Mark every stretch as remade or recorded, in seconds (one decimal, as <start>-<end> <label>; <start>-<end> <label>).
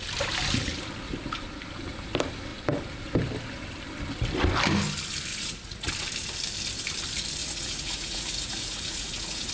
0.0-5.3 recorded; 5.3-5.9 remade; 5.9-7.4 recorded; 7.4-9.5 remade